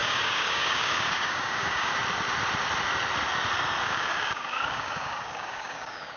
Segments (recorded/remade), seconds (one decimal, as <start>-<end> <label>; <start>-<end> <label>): 0.0-1.9 remade; 1.9-3.8 recorded; 3.8-6.2 remade